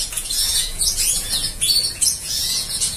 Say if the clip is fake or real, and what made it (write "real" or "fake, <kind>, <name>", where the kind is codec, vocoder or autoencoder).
fake, vocoder, Vocos